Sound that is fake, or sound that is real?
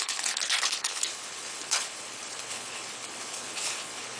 fake